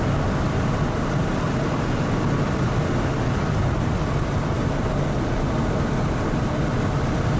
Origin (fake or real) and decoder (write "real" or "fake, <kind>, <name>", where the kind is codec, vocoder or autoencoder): real